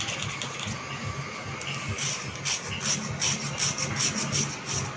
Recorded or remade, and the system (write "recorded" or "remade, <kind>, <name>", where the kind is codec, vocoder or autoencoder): recorded